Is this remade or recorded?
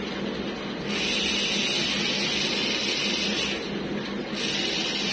recorded